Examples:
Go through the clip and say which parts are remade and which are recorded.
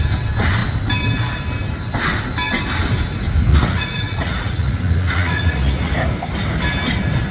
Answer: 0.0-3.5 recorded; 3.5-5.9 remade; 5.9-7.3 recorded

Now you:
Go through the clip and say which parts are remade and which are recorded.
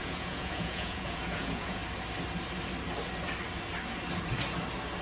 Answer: 0.0-1.8 remade; 1.8-5.0 recorded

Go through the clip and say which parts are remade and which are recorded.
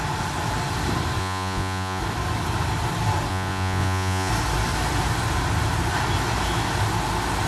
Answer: 0.0-1.2 recorded; 1.2-2.0 remade; 2.0-3.3 recorded; 3.3-4.3 remade; 4.3-7.5 recorded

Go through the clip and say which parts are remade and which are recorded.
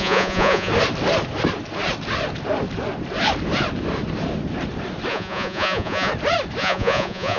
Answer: 0.0-0.7 remade; 0.7-5.1 recorded; 5.1-6.1 remade; 6.1-6.6 recorded; 6.6-7.4 remade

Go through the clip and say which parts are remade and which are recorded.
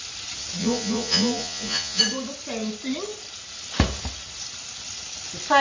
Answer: 0.0-0.6 recorded; 0.6-2.0 remade; 2.0-5.6 recorded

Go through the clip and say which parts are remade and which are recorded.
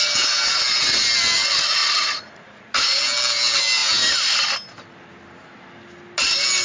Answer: 0.0-1.8 recorded; 1.8-2.6 remade; 2.6-6.6 recorded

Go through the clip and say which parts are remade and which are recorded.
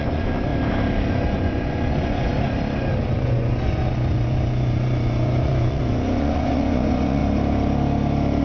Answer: 0.0-0.5 remade; 0.5-1.1 recorded; 1.1-2.3 remade; 2.3-3.0 recorded; 3.0-7.2 remade; 7.2-8.4 recorded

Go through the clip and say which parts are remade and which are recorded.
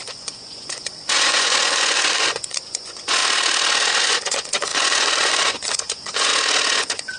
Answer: 0.0-3.2 remade; 3.2-4.0 recorded; 4.0-6.3 remade; 6.3-6.8 recorded; 6.8-7.2 remade